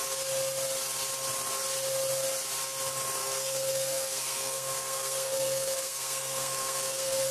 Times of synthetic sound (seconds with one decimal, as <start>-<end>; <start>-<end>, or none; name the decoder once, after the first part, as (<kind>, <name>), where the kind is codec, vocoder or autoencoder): 3.2-7.3 (codec, SNAC)